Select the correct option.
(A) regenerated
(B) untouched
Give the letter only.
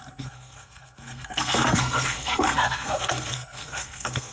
A